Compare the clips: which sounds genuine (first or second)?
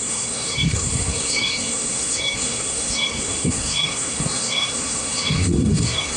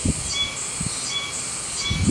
second